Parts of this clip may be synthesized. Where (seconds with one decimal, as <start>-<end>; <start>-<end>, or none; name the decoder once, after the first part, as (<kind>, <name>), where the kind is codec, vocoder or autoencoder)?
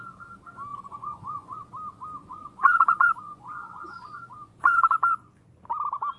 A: 0.7-1.6 (vocoder, Vocos); 2.2-5.5